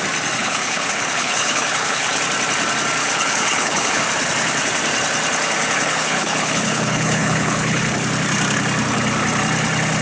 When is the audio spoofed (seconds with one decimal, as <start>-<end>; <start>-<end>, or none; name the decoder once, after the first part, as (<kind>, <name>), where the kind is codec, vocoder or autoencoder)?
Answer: 0.4-2.2 (codec, HILCodec); 3.0-4.0; 5.6-7.8